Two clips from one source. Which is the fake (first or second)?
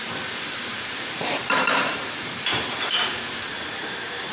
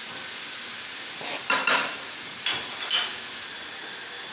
first